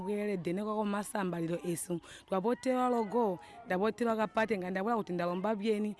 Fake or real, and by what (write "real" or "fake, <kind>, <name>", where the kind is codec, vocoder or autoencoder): real